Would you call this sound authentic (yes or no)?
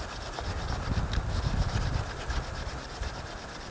yes